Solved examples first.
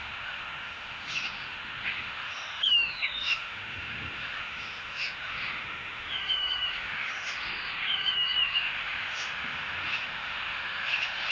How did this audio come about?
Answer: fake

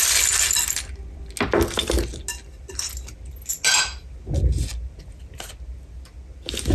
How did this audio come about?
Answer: real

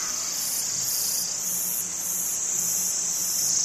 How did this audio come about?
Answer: real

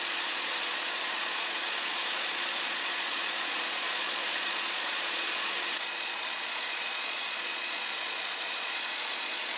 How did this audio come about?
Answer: fake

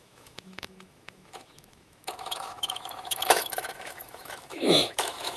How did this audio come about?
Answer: fake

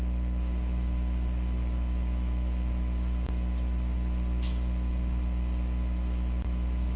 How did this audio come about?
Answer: fake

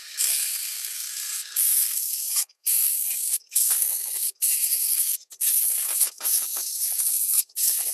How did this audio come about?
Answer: fake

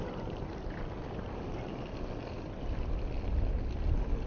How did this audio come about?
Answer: real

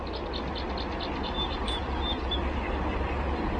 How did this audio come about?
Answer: real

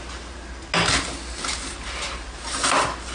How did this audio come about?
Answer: real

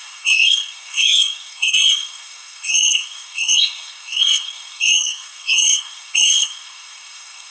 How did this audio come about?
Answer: fake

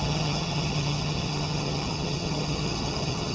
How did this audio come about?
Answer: fake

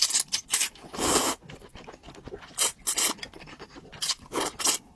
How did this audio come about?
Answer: real